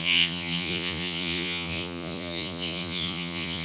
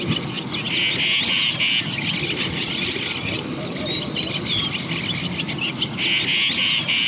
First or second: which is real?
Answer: second